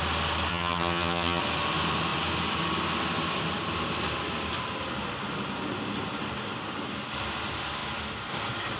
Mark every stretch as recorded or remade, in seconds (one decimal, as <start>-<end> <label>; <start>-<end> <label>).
0.0-0.5 recorded; 0.5-1.4 remade; 1.4-8.8 recorded